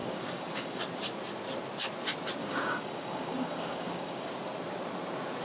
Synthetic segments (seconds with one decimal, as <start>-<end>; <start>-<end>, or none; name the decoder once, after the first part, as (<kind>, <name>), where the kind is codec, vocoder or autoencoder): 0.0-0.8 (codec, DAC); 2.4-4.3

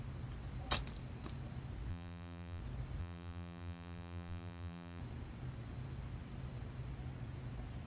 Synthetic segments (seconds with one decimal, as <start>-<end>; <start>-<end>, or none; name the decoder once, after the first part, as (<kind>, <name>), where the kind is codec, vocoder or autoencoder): 1.9-2.6 (vocoder, BigVGAN v2); 3.0-5.0

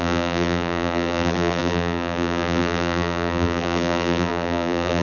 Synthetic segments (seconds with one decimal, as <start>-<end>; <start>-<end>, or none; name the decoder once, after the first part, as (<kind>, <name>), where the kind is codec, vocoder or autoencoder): 0.0-5.0 (vocoder, BigVGAN v2)

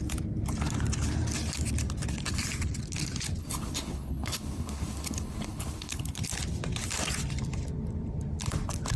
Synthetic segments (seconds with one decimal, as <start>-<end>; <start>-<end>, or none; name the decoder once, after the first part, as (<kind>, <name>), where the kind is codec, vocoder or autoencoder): 3.4-6.2 (codec, HILCodec)

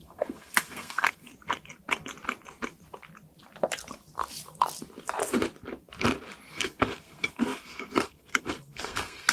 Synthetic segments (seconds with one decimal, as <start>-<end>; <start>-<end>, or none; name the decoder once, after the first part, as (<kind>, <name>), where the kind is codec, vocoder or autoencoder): 0.0-1.2 (codec, SNAC); 6.5-9.3

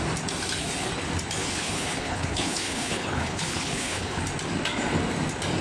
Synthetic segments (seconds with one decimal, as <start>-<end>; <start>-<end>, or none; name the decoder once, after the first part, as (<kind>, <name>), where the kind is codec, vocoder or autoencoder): 1.4-4.2 (codec, HILCodec)

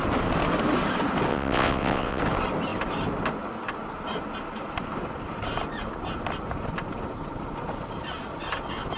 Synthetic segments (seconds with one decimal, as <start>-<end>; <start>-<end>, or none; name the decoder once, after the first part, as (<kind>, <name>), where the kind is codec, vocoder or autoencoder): 1.3-2.2 (vocoder, WaveNeXt)